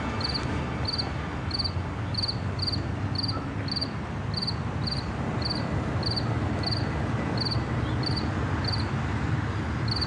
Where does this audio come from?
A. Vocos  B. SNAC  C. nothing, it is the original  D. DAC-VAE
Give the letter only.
C